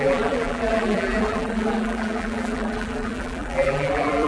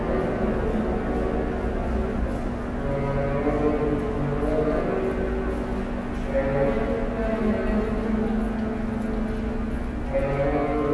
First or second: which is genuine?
second